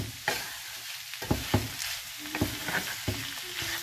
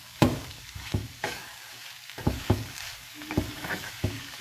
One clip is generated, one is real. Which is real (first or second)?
first